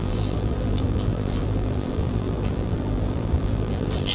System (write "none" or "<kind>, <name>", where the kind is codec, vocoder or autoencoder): vocoder, BigVGAN v2